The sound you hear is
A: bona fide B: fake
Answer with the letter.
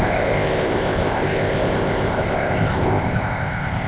B